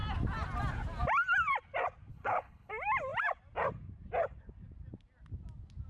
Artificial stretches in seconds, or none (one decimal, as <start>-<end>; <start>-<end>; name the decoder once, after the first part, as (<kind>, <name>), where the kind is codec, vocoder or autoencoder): 2.1-2.7 (codec, HILCodec)